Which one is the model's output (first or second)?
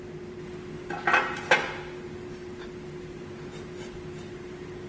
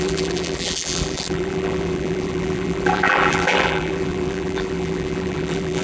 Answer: second